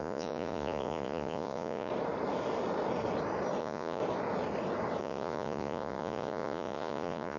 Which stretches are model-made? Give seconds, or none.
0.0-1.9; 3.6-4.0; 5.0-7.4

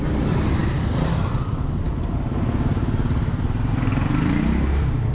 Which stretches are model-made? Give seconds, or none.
none

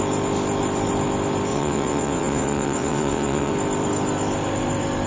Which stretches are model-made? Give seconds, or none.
1.5-3.5

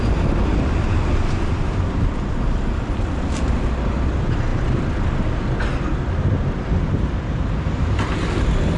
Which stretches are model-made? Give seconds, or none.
none

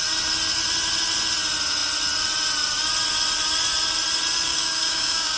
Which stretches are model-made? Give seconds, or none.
4.5-5.4

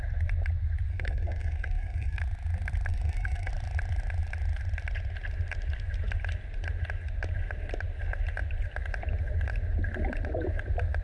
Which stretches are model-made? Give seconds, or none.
0.9-2.2; 2.9-3.5